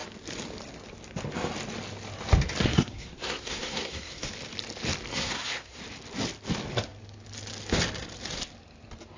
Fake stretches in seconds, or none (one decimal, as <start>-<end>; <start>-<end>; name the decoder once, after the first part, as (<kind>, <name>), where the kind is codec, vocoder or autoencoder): 2.7-4.3 (codec, SNAC); 5.1-5.8